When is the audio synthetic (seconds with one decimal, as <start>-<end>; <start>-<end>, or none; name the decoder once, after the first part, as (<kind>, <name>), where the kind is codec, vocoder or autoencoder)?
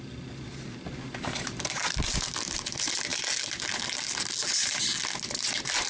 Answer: none